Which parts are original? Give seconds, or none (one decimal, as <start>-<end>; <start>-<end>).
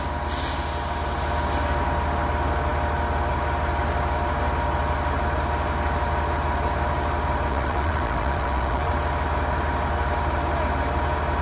0.0-7.5; 8.9-11.4